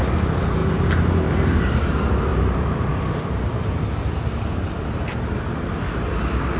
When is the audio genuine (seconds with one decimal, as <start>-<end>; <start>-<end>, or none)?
0.0-0.6; 1.9-6.6